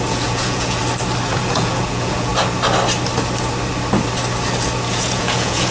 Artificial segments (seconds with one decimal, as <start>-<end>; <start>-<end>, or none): 0.0-0.8; 1.3-2.3; 4.9-5.7